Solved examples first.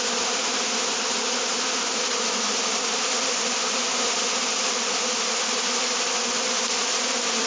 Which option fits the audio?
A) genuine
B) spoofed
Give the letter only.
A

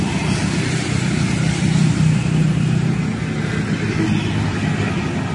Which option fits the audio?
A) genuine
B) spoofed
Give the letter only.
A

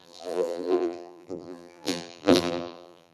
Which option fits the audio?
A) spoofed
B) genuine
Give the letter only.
A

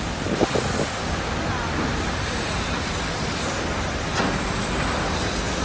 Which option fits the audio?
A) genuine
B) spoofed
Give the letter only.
A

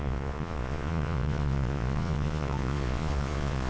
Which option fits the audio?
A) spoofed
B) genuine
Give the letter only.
A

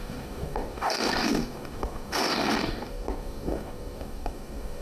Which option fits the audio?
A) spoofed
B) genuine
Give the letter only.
A